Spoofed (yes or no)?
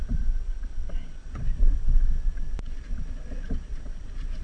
yes